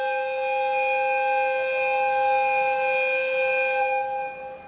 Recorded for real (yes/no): yes